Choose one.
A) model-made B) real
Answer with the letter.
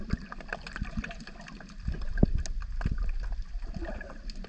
B